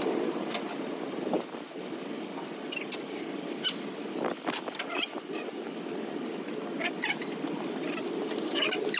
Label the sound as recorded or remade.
remade